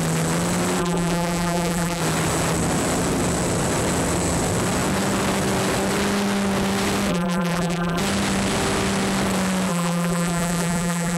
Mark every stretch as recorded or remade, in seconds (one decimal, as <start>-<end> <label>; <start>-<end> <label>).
0.0-0.8 recorded; 0.8-2.0 remade; 2.0-7.1 recorded; 7.1-8.0 remade; 8.0-9.7 recorded; 9.7-11.2 remade